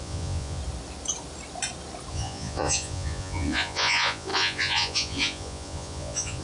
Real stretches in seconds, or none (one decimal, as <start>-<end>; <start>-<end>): 0.6-2.1